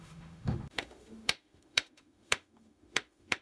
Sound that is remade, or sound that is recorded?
remade